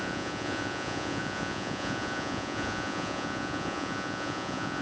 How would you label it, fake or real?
fake